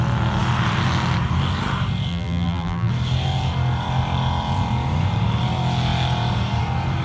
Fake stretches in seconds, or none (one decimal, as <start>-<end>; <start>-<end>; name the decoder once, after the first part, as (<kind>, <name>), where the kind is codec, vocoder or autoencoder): 2.1-2.9 (vocoder, BigVGAN v2)